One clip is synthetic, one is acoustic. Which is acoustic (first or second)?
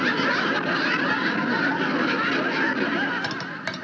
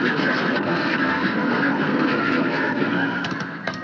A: first